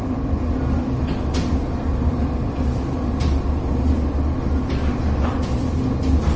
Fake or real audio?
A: real